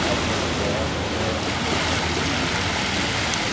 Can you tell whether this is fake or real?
real